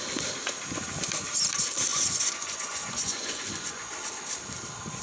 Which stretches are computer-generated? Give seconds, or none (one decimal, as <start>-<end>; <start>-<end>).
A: 1.9-3.9